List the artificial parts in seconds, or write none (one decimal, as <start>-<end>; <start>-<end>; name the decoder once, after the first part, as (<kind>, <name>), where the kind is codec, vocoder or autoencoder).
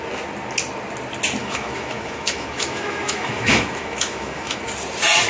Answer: 1.4-4.6 (autoencoder, DAC-VAE)